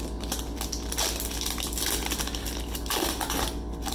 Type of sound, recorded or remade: recorded